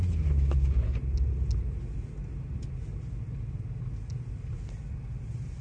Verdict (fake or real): real